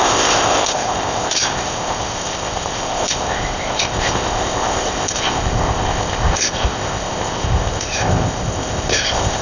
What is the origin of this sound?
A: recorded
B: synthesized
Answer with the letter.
B